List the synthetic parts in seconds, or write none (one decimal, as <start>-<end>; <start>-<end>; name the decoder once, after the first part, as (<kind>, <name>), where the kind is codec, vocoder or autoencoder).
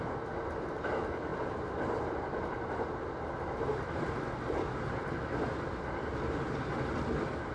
1.3-4.9 (vocoder, BigVGAN v2)